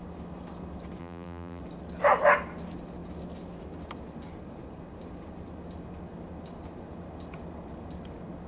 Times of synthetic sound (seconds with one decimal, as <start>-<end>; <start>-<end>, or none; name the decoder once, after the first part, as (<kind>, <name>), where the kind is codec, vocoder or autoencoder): 1.0-1.6 (vocoder, BigVGAN v2)